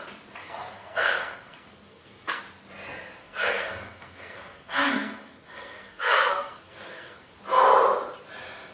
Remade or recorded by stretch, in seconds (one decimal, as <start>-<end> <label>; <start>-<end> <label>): 0.0-0.4 recorded; 0.4-2.4 remade; 2.4-3.2 recorded; 3.2-7.3 remade; 7.3-8.7 recorded